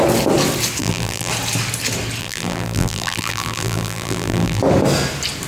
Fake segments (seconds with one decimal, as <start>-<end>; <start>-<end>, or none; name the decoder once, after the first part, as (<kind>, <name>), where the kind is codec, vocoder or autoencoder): 0.8-1.3 (vocoder, BigVGAN v2); 2.2-4.6